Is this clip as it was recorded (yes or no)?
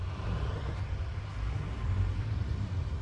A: yes